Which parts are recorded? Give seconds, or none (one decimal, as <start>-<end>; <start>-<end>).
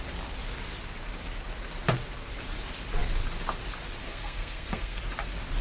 0.0-4.0; 5.0-5.6